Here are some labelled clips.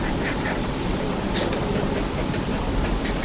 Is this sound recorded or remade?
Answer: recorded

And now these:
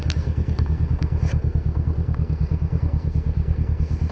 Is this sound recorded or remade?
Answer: remade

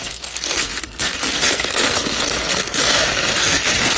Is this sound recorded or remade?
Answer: remade